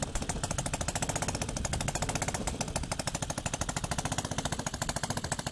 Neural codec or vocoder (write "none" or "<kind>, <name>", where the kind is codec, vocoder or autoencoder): none